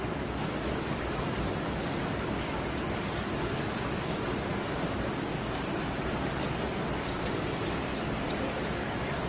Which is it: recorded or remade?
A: recorded